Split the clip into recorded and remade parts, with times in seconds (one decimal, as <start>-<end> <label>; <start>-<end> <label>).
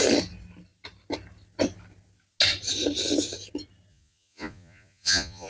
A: 0.0-3.9 recorded; 3.9-5.5 remade